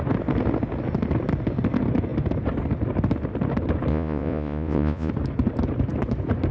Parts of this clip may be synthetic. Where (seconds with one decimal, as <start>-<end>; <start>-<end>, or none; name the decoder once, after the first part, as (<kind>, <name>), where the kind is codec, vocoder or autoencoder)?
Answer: 3.9-5.1 (vocoder, Vocos)